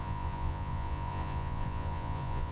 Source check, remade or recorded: remade